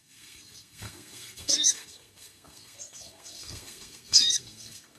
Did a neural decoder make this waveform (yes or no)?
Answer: yes